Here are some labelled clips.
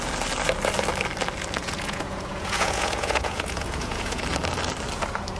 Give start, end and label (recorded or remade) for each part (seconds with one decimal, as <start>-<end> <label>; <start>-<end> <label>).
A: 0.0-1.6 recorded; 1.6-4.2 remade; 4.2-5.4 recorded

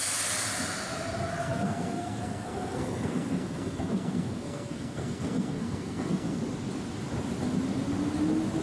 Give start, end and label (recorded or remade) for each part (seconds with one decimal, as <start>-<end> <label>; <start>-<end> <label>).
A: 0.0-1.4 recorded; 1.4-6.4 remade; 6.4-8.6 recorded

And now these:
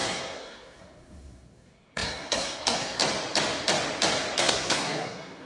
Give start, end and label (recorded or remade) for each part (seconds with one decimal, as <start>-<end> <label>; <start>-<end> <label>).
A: 0.0-3.0 remade; 3.0-4.4 recorded; 4.4-5.5 remade

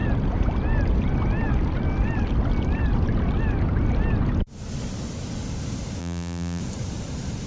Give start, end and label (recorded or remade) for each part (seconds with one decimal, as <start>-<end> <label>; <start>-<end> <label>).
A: 0.0-6.0 recorded; 6.0-6.6 remade; 6.6-7.5 recorded

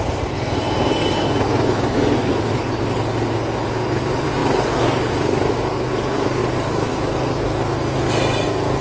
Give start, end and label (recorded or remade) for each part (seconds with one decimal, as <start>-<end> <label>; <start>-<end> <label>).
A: 0.0-2.2 recorded; 2.2-2.8 remade; 2.8-6.4 recorded; 6.4-6.9 remade; 6.9-8.8 recorded